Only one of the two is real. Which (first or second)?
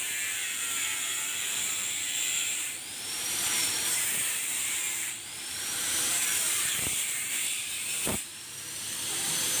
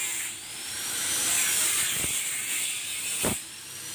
second